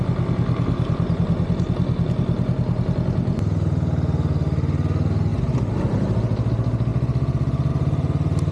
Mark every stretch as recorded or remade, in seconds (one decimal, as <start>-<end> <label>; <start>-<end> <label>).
0.0-8.5 recorded